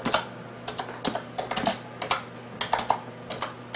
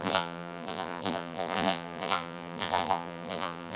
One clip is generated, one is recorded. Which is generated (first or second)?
second